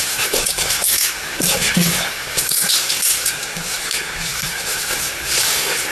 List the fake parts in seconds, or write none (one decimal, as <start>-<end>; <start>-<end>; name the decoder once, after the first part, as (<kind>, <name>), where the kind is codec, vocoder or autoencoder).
0.0-5.9 (codec, SNAC)